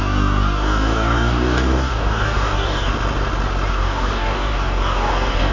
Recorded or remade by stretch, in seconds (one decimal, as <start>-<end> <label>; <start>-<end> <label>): 0.0-2.9 remade; 2.9-3.7 recorded; 3.7-5.5 remade